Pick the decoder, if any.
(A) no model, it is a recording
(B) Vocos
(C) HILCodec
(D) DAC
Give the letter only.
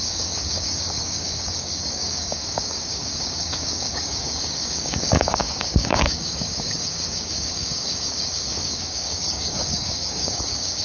D